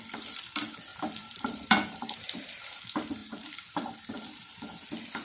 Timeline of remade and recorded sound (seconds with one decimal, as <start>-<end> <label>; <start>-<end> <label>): 0.0-0.9 recorded; 0.9-2.8 remade; 2.8-3.2 recorded; 3.2-4.3 remade; 4.3-5.2 recorded